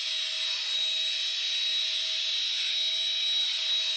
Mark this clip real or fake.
real